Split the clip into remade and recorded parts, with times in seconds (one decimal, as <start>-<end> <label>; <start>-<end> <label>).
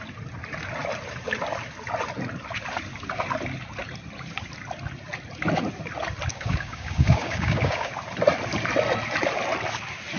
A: 0.0-6.3 recorded; 6.3-7.9 remade; 7.9-10.2 recorded